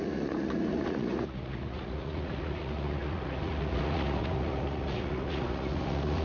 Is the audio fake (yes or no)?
yes